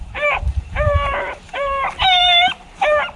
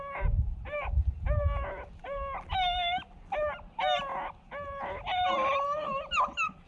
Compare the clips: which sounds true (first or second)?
second